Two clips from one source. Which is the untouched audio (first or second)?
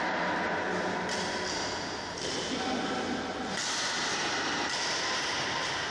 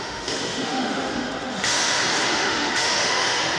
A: first